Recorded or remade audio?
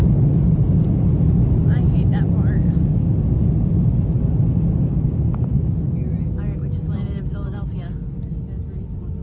recorded